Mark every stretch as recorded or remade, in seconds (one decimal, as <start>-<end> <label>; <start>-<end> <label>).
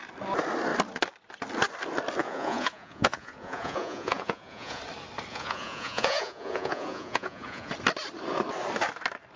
0.0-2.2 recorded; 2.2-4.8 remade; 4.8-5.3 recorded; 5.3-7.7 remade; 7.7-9.4 recorded